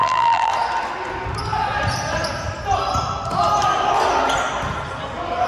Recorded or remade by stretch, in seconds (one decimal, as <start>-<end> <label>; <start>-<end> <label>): 0.0-0.5 remade; 0.5-5.5 recorded